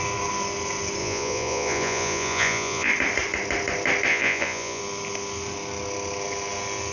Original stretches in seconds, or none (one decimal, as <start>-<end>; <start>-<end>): 0.0-1.0; 2.9-4.1; 4.8-6.9